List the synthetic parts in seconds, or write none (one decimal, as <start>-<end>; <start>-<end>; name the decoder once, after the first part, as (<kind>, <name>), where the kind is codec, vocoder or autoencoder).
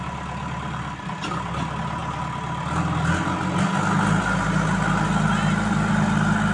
none